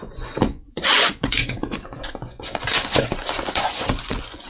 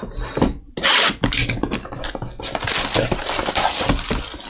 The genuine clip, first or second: second